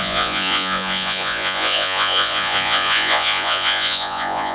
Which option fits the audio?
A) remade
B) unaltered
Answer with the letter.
A